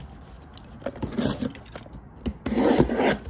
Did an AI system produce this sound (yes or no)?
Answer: no